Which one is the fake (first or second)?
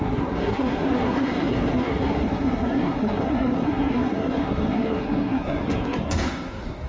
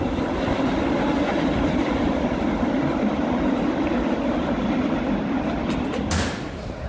first